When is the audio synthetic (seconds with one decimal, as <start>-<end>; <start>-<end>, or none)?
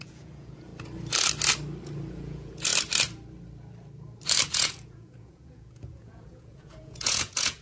0.0-0.7; 2.1-2.7; 4.5-7.6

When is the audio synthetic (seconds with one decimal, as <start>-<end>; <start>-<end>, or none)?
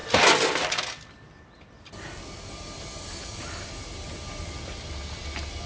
none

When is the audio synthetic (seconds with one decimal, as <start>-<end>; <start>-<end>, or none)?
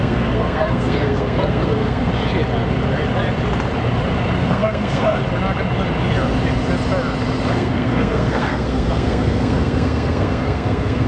0.0-2.1; 4.4-5.2; 7.5-11.1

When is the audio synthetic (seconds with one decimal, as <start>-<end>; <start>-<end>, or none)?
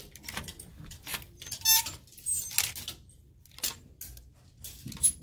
none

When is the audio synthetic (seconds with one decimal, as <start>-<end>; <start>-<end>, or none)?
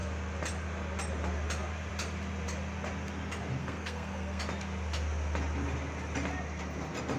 3.6-4.4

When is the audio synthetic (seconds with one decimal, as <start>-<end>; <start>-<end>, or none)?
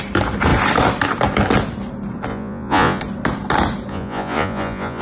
2.3-3.0; 3.9-5.0